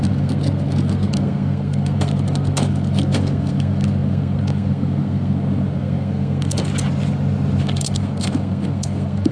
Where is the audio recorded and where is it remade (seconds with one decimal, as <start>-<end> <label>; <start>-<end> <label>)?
0.0-6.7 remade; 6.7-7.6 recorded; 7.6-9.3 remade

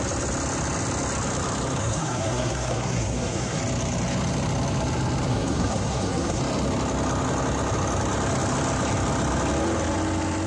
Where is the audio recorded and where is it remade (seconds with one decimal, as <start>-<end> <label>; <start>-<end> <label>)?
0.0-1.8 recorded; 1.8-3.6 remade; 3.6-5.3 recorded; 5.3-6.4 remade; 6.4-10.5 recorded

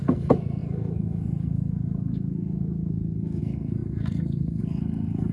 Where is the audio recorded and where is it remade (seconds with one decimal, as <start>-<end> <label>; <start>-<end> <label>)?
0.0-5.3 remade

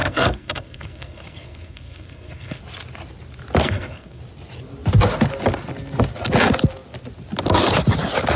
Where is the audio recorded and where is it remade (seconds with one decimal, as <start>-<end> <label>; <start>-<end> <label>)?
0.0-2.6 remade; 2.6-3.6 recorded; 3.6-4.2 remade; 4.2-8.4 recorded

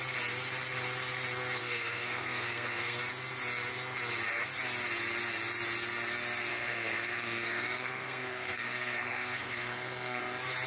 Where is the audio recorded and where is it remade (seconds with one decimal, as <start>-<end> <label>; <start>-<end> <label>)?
0.0-1.6 recorded; 1.6-3.0 remade; 3.0-6.5 recorded; 6.5-10.2 remade; 10.2-10.7 recorded

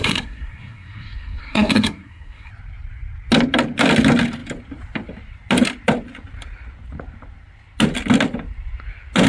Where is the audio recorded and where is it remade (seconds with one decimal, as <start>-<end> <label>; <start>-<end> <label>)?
0.0-2.5 remade; 2.5-9.3 recorded

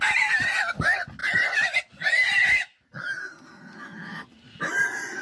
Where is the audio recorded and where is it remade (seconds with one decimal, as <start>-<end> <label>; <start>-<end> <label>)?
0.0-5.2 recorded